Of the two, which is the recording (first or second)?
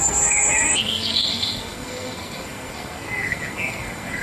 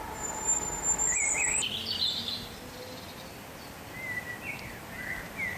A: second